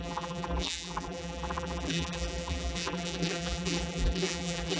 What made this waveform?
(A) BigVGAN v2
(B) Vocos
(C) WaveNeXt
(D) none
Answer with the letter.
A